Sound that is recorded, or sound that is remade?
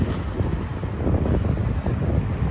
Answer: recorded